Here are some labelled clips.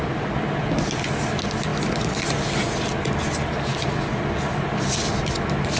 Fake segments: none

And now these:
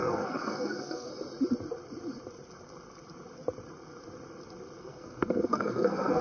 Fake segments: 0.0-1.1 (codec, SNAC); 4.8-6.2

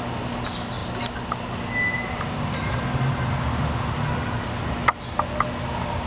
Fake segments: none

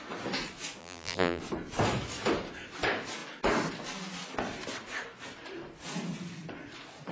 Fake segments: 0.8-1.4 (vocoder, BigVGAN v2)

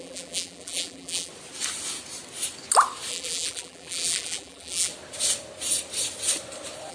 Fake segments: 0.0-1.3 (vocoder, BigVGAN v2); 3.1-4.9

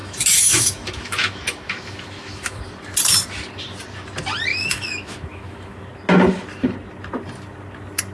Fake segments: 0.0-2.6 (autoencoder, DAC-VAE); 4.5-5.8

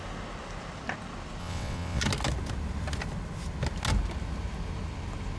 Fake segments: 1.4-2.0 (vocoder, WaveNeXt)

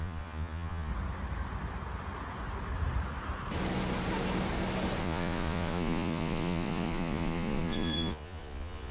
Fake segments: 0.0-0.9 (vocoder, Vocos); 5.0-8.9